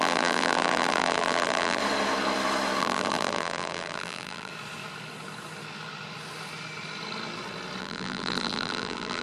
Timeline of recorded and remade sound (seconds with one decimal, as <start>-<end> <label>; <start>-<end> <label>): 0.0-1.8 remade; 1.8-2.8 recorded; 2.8-4.5 remade; 4.5-7.8 recorded; 7.8-9.2 remade